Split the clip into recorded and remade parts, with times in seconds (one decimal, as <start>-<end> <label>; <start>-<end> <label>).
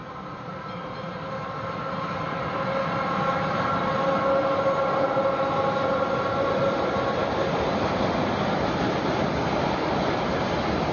0.0-10.9 recorded